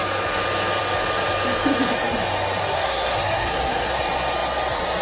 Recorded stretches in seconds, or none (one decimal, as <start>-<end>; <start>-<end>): 0.0-2.6; 3.9-5.0